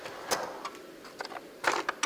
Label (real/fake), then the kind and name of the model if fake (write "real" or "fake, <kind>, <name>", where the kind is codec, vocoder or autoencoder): real